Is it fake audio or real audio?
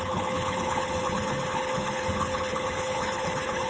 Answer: fake